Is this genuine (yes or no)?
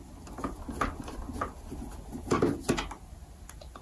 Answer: yes